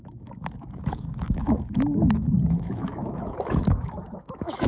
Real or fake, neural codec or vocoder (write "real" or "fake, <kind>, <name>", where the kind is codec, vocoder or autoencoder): fake, autoencoder, DAC-VAE